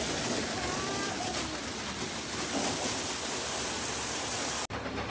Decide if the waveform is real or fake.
real